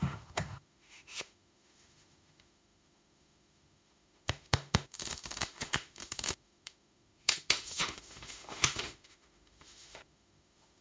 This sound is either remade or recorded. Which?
remade